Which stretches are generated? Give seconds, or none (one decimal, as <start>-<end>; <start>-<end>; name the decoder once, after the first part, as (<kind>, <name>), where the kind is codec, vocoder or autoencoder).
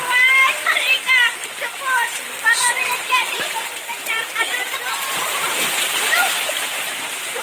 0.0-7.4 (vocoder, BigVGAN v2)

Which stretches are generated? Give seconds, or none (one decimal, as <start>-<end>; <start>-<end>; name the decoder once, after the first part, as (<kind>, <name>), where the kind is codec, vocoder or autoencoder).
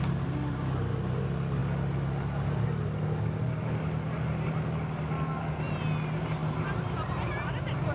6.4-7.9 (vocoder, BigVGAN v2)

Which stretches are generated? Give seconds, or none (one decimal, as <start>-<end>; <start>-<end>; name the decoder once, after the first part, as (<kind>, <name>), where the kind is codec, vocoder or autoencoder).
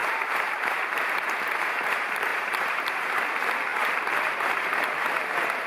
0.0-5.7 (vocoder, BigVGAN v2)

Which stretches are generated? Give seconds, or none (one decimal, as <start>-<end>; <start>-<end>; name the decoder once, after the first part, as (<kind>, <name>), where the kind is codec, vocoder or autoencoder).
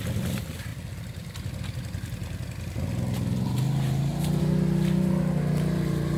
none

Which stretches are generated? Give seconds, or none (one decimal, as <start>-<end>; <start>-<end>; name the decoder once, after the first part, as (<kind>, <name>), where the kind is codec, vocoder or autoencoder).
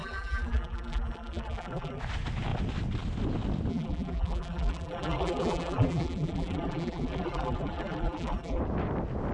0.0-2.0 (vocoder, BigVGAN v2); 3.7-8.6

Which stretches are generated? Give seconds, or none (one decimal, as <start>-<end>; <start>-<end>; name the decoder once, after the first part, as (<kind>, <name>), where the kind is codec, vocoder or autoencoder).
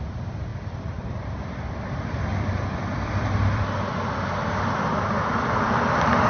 0.5-3.6 (vocoder, BigVGAN v2)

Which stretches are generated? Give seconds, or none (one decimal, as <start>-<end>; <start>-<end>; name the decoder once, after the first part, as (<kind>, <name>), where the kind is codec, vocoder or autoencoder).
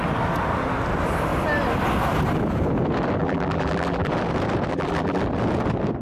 3.2-4.1 (vocoder, BigVGAN v2); 4.7-5.2